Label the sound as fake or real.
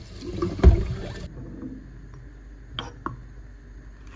real